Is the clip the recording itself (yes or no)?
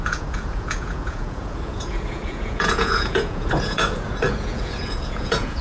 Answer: no